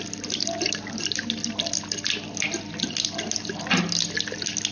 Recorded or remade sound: recorded